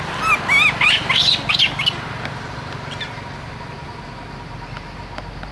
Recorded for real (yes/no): yes